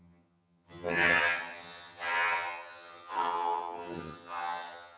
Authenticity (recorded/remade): remade